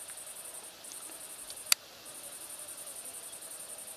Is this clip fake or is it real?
real